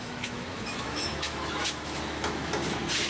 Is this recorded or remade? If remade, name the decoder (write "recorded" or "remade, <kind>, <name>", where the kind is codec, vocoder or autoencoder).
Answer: remade, autoencoder, DAC-VAE